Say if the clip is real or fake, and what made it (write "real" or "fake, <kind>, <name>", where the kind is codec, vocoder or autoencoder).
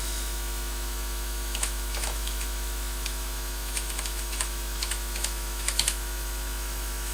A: fake, autoencoder, DAC-VAE